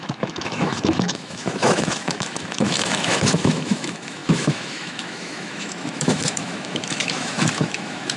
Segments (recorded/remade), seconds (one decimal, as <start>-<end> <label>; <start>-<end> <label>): 0.0-8.2 remade